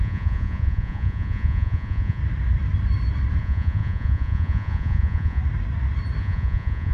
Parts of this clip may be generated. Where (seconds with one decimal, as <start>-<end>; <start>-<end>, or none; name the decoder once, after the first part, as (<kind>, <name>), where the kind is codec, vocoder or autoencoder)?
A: 0.0-2.2 (vocoder, Vocos); 3.4-5.4; 6.2-6.9